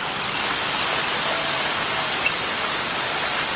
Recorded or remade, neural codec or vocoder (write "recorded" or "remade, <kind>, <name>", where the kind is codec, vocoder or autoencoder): recorded